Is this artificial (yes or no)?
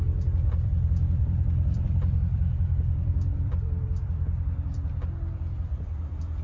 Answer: yes